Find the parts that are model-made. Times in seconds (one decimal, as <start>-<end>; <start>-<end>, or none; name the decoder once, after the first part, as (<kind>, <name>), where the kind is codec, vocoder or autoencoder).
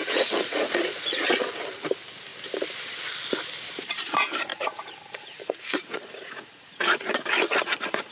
0.0-1.6 (vocoder, Vocos); 4.5-7.2